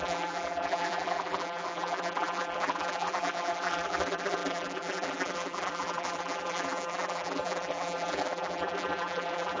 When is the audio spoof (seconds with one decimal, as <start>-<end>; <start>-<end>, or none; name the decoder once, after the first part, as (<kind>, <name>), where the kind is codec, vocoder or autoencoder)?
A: 0.0-9.6 (vocoder, BigVGAN v2)